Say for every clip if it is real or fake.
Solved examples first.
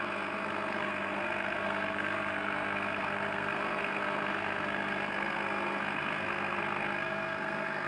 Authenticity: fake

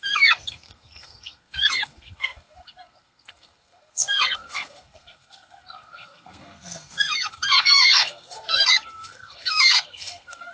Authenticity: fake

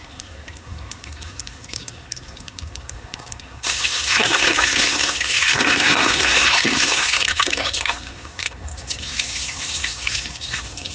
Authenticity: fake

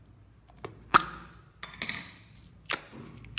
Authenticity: real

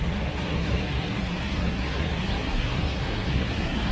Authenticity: fake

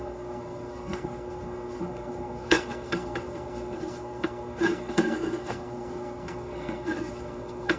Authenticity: fake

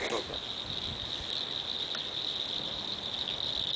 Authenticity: real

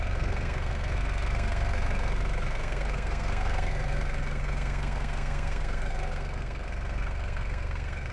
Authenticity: fake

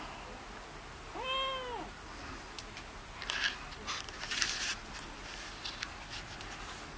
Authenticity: real